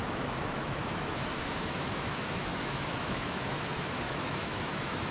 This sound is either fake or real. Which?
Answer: fake